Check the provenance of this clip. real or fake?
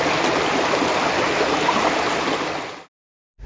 real